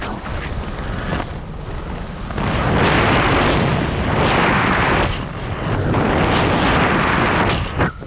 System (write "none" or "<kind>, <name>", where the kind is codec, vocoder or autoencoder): none